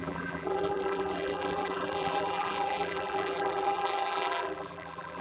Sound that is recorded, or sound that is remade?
remade